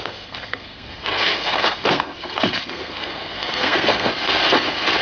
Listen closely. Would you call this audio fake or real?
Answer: fake